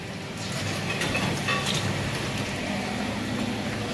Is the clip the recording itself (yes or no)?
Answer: yes